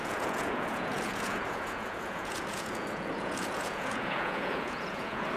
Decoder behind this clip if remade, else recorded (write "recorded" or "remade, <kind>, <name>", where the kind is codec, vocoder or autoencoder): remade, vocoder, Vocos